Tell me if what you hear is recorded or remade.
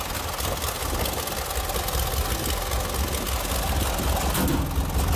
recorded